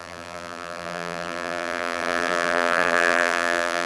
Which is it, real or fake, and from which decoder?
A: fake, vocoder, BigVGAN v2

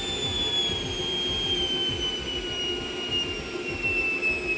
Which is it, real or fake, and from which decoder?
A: real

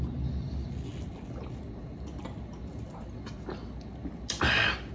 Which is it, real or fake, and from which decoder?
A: real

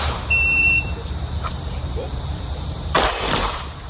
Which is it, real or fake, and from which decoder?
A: fake, vocoder, BigVGAN v2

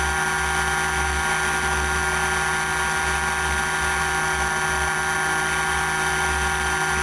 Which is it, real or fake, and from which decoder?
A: real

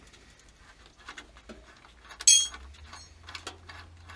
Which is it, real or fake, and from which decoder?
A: real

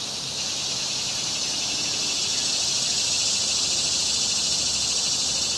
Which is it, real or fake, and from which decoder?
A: real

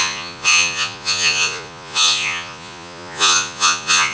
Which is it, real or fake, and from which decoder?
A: fake, vocoder, Vocos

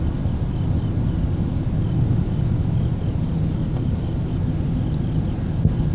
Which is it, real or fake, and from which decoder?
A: real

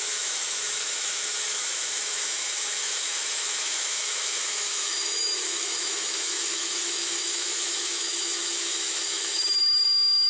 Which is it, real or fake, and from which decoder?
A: fake, autoencoder, DAC-VAE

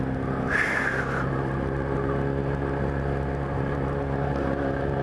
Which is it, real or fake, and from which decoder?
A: real